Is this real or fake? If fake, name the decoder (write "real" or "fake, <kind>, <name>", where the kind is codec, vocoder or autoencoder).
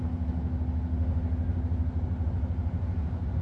real